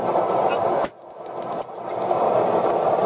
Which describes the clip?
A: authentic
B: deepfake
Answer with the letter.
A